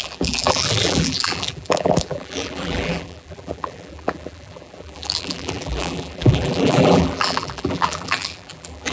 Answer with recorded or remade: remade